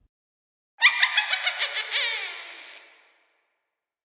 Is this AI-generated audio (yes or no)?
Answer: no